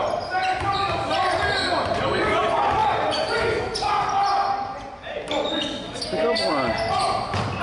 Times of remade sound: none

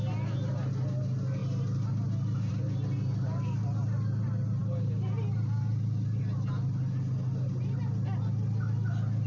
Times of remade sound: none

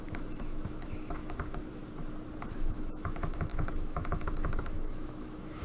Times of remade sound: 0.0-1.8 (autoencoder, DAC-VAE); 2.5-5.6

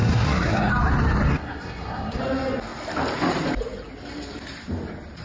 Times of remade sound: 0.0-0.7 (codec, SNAC); 1.3-2.2

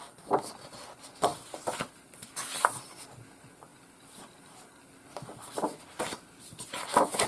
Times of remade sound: none